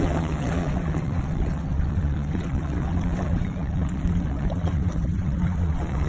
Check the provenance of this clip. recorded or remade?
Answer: remade